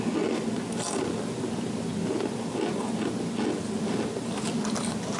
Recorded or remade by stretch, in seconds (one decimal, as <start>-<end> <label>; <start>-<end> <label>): 0.0-5.2 recorded